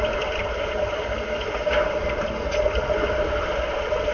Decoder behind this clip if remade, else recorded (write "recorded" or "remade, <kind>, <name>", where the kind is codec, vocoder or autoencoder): recorded